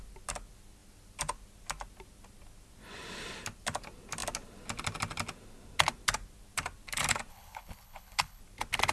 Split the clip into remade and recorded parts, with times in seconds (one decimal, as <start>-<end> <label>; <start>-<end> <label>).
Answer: 0.0-7.3 recorded; 7.3-8.4 remade; 8.4-8.9 recorded